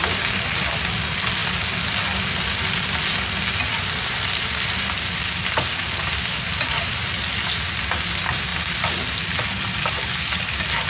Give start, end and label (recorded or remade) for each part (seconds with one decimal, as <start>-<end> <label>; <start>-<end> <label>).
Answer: 0.0-10.9 recorded

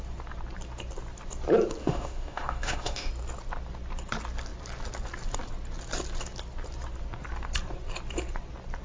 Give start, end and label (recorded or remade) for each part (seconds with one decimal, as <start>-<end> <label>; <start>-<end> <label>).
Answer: 0.0-1.8 recorded; 1.8-3.1 remade; 3.1-8.8 recorded

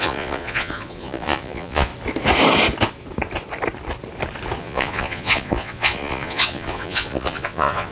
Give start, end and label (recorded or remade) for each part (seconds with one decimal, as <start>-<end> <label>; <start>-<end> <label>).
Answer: 0.0-1.9 remade; 1.9-4.6 recorded; 4.6-7.9 remade

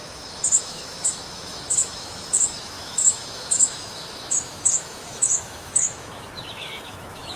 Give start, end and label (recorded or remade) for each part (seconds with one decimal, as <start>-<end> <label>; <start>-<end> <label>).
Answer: 0.0-7.4 remade

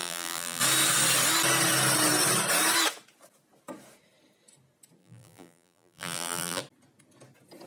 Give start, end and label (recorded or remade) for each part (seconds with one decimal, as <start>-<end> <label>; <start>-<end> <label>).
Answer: 0.0-0.6 remade; 0.6-5.0 recorded; 5.0-6.6 remade; 6.6-7.7 recorded

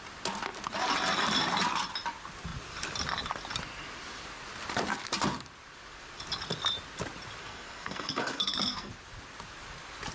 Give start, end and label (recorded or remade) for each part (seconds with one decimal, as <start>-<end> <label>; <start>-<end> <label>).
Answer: 0.0-7.4 recorded; 7.4-8.9 remade; 8.9-10.1 recorded